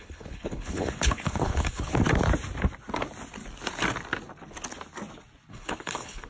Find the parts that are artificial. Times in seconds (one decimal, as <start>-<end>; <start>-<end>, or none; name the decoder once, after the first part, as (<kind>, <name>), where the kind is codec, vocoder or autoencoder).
0.0-1.9 (codec, HILCodec); 5.5-6.3